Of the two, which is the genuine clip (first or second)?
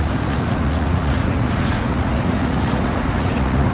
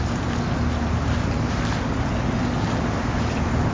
second